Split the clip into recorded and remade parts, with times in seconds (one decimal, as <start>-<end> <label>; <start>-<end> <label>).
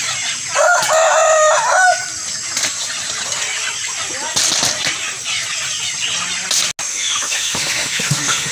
0.0-6.9 recorded; 6.9-8.5 remade